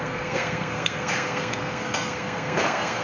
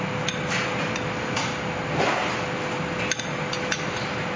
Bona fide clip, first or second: second